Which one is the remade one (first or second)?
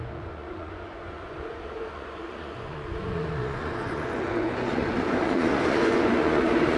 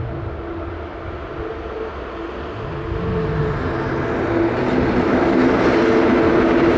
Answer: first